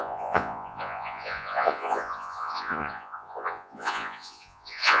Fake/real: fake